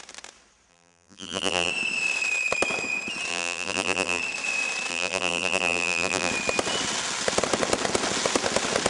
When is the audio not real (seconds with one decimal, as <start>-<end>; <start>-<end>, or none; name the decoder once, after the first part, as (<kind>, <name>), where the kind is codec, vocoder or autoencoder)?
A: 0.7-1.7 (vocoder, BigVGAN v2); 3.3-4.2; 4.9-6.3

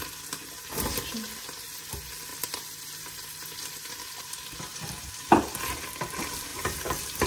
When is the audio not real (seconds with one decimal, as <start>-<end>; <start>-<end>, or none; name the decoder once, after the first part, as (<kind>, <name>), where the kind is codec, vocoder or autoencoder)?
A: 2.3-5.1 (vocoder, BigVGAN v2); 6.5-7.3